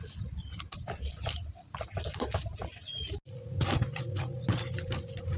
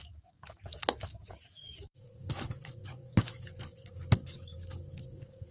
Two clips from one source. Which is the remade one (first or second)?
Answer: second